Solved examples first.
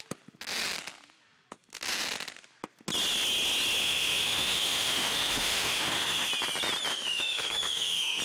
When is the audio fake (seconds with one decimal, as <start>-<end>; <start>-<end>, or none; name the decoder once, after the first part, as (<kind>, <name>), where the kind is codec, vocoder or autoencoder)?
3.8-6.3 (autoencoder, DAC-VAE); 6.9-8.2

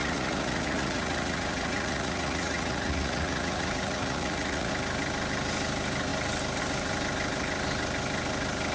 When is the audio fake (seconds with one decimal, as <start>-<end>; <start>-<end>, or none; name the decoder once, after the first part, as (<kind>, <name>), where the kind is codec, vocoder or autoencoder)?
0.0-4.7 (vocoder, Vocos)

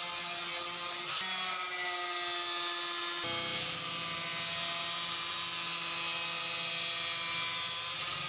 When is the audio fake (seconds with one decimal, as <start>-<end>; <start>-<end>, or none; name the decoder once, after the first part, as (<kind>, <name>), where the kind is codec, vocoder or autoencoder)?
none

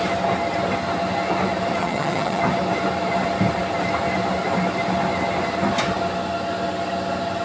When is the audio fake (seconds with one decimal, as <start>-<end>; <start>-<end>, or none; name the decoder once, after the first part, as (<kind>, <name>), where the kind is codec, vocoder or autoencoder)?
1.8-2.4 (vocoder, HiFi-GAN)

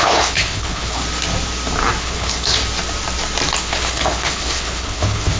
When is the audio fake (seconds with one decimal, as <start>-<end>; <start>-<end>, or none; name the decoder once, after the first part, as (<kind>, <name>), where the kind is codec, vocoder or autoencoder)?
0.0-1.0 (codec, HILCodec); 2.0-2.6; 3.6-5.4

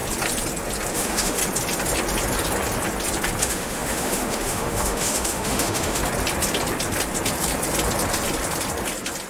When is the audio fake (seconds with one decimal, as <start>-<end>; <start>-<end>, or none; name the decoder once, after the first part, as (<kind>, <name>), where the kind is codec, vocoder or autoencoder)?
0.9-1.4 (autoencoder, DAC-VAE); 3.4-6.0

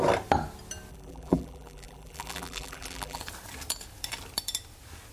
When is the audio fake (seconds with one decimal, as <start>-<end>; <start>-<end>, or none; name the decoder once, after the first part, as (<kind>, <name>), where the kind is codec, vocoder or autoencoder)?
0.9-3.2 (vocoder, BigVGAN v2)

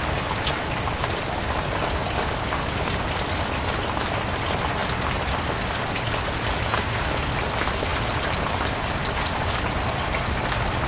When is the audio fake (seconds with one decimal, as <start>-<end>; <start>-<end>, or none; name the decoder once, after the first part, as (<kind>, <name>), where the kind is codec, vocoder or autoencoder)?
none